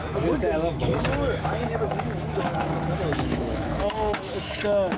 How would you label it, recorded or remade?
remade